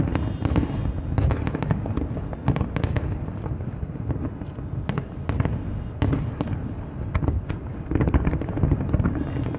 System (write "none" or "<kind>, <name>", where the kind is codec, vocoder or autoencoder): none